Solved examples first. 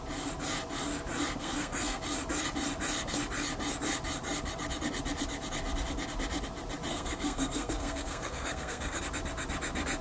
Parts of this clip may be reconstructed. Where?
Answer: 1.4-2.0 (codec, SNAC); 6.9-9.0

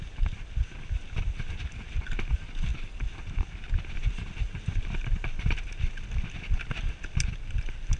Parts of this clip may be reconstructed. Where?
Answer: none